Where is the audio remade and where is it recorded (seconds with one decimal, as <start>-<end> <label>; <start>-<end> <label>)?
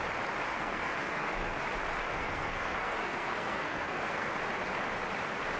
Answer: 0.0-0.5 recorded; 0.5-1.6 remade; 1.6-2.0 recorded; 2.0-4.3 remade; 4.3-5.6 recorded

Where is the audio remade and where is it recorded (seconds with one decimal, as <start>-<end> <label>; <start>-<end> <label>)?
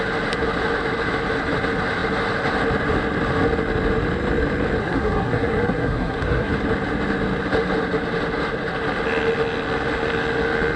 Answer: 0.0-4.8 recorded; 4.8-6.5 remade; 6.5-10.8 recorded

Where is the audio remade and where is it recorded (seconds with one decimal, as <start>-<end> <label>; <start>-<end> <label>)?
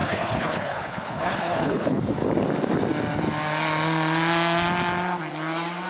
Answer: 0.0-2.2 remade; 2.2-5.9 recorded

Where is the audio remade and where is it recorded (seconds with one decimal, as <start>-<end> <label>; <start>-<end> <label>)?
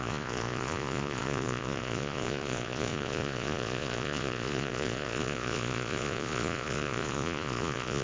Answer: 0.0-8.0 remade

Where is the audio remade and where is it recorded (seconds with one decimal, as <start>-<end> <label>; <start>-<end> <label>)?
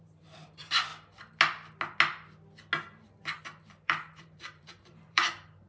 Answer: 0.0-0.9 remade; 0.9-3.4 recorded; 3.4-5.7 remade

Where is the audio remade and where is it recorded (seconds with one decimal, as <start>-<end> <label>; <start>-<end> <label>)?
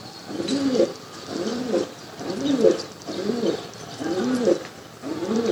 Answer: 0.0-1.5 recorded; 1.5-4.8 remade; 4.8-5.5 recorded